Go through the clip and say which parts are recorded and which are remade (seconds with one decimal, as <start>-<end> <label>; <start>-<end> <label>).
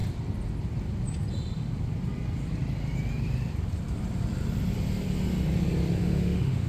0.0-6.0 recorded; 6.0-6.7 remade